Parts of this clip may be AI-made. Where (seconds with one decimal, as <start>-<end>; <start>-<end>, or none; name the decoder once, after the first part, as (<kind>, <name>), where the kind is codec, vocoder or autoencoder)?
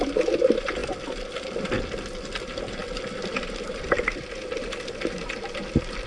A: 0.8-1.7 (vocoder, BigVGAN v2)